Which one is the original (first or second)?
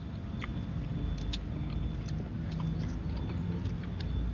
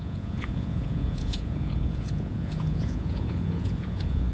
first